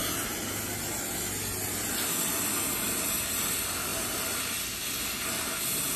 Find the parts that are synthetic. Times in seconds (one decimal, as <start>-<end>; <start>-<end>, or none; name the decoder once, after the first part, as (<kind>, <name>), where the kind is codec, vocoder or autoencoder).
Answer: none